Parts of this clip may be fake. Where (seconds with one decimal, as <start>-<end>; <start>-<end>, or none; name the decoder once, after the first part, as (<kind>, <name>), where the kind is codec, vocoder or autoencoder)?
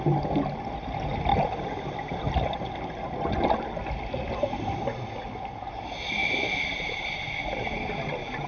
none